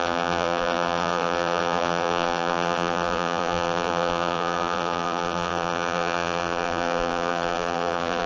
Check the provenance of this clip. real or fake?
fake